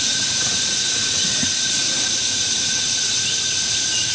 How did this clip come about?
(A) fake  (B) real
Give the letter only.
A